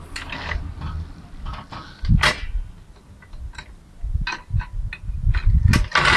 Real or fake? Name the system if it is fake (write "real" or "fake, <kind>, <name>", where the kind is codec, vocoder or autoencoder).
real